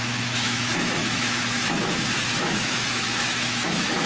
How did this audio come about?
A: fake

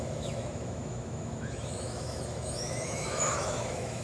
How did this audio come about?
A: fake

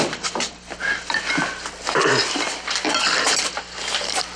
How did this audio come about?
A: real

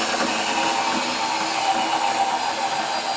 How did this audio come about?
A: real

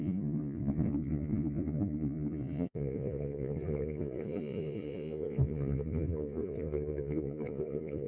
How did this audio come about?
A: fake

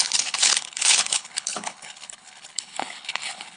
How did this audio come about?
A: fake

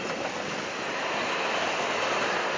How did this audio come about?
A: real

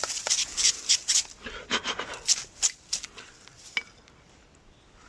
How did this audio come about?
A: real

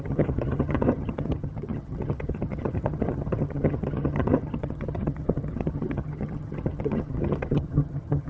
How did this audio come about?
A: fake